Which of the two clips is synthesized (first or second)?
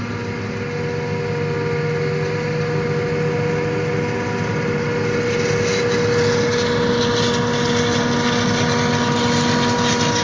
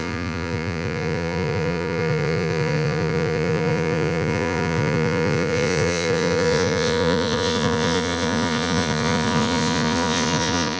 second